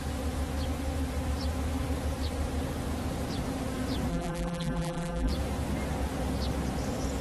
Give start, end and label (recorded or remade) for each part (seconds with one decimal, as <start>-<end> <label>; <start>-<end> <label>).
0.0-4.1 recorded; 4.1-5.3 remade; 5.3-7.2 recorded